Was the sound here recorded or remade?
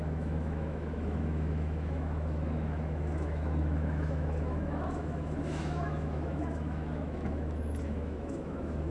remade